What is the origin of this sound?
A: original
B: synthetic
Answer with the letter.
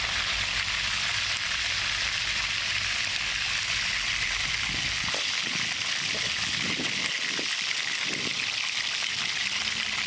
A